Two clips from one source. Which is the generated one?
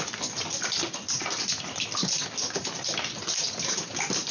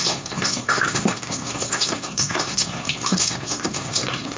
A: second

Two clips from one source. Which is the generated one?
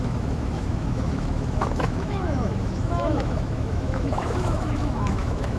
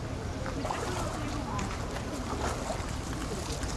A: first